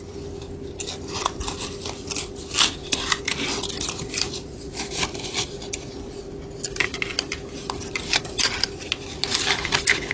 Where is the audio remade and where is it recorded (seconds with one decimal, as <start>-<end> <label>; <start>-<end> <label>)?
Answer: 0.0-10.1 recorded